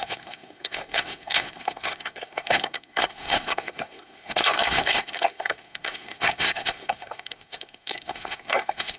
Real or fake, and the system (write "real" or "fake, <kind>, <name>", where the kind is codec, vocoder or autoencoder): fake, codec, SNAC